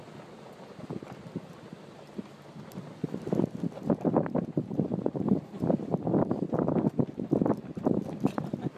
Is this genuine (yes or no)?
yes